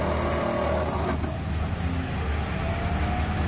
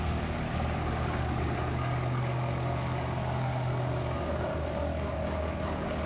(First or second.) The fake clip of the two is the second